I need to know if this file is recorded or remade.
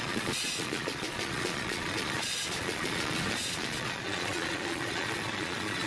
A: remade